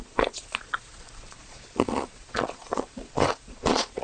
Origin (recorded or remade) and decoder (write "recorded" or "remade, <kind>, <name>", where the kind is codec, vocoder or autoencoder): remade, vocoder, Vocos